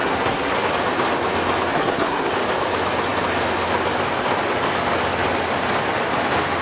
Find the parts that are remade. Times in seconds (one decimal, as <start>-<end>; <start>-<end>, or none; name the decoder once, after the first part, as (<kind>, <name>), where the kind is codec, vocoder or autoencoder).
0.0-0.7 (codec, SNAC); 1.7-2.3